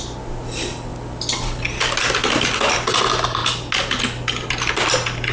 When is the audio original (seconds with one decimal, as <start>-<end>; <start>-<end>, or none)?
0.0-5.3